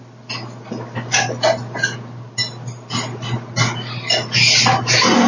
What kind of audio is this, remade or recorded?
recorded